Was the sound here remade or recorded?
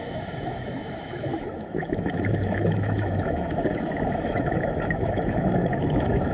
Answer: remade